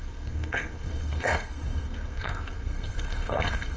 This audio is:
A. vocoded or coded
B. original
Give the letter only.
A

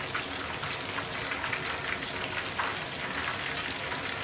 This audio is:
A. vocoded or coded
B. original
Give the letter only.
B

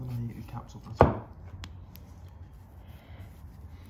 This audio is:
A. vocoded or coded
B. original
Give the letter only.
B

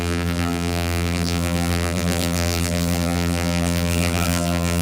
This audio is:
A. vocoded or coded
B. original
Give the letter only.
A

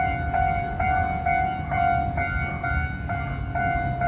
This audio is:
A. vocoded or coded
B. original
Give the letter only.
B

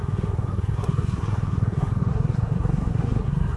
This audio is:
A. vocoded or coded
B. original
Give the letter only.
A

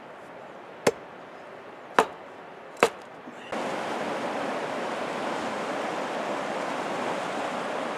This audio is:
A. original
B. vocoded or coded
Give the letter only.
A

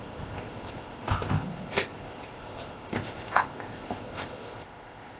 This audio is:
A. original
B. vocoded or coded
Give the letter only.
B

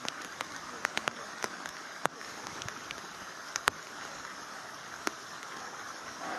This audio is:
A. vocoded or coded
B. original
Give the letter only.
A